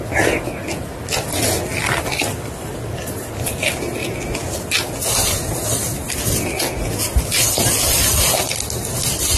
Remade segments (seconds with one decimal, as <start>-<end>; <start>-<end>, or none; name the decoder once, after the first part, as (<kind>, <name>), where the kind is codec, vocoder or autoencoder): none